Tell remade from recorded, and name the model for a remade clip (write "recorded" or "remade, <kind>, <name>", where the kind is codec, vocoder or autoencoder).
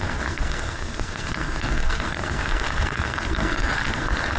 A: remade, codec, SNAC